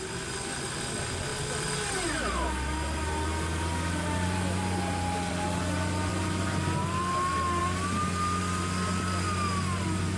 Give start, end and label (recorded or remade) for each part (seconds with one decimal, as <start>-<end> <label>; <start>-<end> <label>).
0.0-10.2 recorded

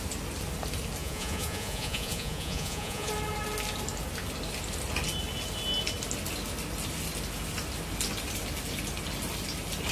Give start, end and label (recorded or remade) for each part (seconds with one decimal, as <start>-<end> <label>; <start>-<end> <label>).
0.0-1.0 recorded; 1.0-3.1 remade; 3.1-9.9 recorded

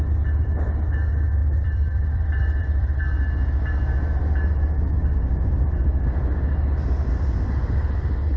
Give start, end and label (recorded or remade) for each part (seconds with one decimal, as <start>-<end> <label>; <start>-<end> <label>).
0.0-1.4 recorded; 1.4-3.0 remade; 3.0-8.4 recorded

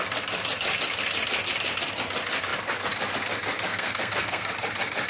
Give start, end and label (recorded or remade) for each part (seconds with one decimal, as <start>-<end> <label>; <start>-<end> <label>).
0.0-3.7 recorded; 3.7-4.5 remade; 4.5-5.1 recorded

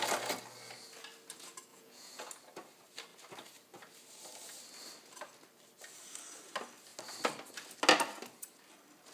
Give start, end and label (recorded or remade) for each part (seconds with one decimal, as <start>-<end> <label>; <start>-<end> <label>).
0.0-1.7 recorded; 1.7-2.3 remade; 2.3-9.1 recorded